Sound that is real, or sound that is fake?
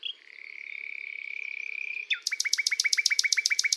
fake